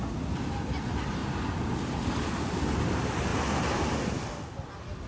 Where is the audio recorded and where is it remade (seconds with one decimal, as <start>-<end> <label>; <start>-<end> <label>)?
0.0-5.1 recorded